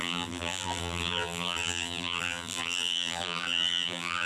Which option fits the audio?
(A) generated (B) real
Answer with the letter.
A